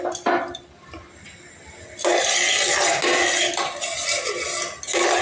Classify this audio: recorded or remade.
recorded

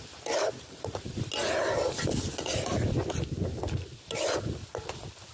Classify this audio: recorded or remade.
recorded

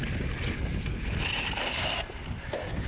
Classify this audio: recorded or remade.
recorded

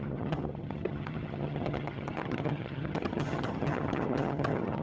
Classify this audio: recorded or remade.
remade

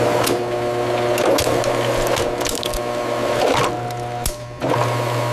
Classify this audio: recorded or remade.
recorded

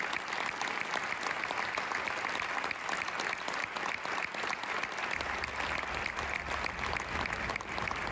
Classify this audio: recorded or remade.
recorded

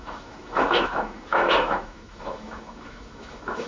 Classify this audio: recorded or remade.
remade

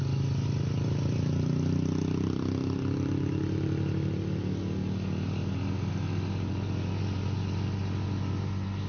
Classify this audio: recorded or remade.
recorded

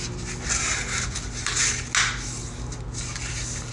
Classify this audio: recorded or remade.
recorded